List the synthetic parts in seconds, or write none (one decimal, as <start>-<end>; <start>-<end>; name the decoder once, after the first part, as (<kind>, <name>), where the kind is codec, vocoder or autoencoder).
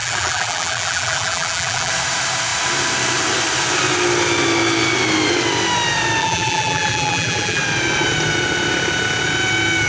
0.0-1.9 (vocoder, BigVGAN v2); 6.2-7.6